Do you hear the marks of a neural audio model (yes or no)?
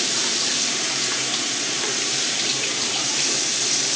yes